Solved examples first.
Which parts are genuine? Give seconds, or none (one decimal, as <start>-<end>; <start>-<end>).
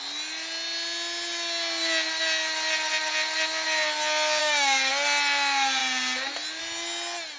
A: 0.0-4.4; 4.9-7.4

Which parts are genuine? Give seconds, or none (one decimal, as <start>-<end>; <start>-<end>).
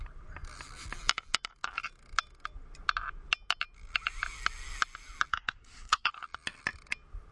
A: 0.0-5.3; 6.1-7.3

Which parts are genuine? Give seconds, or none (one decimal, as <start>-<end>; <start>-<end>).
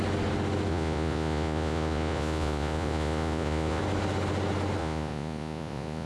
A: 0.0-0.7; 3.8-4.8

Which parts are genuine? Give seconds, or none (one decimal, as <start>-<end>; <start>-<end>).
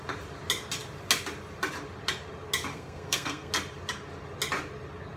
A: 0.0-2.7; 3.5-5.2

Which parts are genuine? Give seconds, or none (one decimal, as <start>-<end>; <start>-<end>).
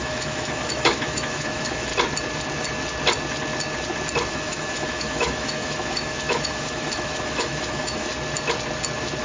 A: 1.9-4.3; 8.1-9.2